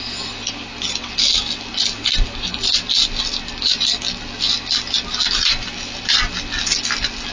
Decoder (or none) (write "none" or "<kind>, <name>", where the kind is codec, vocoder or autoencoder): none